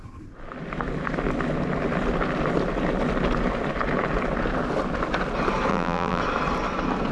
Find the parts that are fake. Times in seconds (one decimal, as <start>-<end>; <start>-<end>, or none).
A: 5.7-6.2